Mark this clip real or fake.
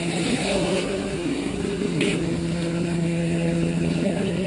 fake